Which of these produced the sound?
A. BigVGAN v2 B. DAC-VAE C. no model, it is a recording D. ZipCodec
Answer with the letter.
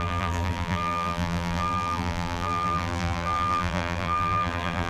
A